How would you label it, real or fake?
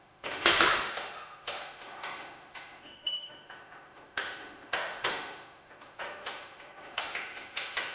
fake